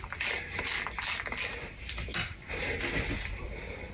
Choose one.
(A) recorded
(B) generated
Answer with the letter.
A